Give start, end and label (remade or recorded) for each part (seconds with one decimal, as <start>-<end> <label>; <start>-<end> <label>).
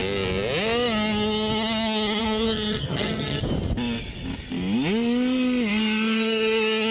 0.0-2.2 recorded; 2.2-3.4 remade; 3.4-6.9 recorded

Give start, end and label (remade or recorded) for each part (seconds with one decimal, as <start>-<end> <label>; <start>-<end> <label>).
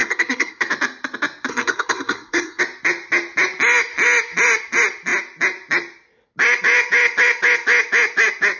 0.0-0.6 remade; 0.6-1.5 recorded; 1.5-2.6 remade; 2.6-8.6 recorded